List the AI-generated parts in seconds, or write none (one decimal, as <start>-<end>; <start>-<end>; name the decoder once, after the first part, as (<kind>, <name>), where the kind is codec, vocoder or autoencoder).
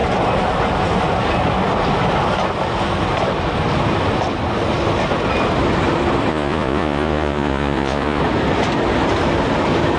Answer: 6.3-8.2 (vocoder, Vocos)